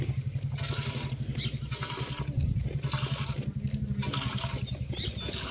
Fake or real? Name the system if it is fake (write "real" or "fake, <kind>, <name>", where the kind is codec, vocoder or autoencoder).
real